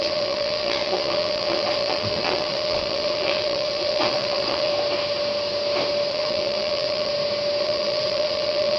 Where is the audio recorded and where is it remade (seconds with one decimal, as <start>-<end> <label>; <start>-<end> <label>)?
0.0-4.7 remade; 4.7-6.1 recorded; 6.1-7.1 remade; 7.1-7.6 recorded; 7.6-8.8 remade